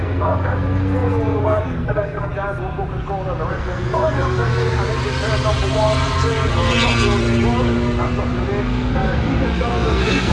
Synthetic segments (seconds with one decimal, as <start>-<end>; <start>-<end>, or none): 0.0-2.3; 3.5-4.7; 8.6-10.3